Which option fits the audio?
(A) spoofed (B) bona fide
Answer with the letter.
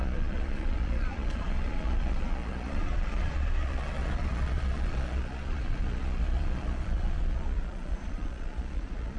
A